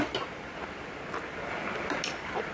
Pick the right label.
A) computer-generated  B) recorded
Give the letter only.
B